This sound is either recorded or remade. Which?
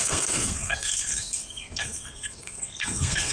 remade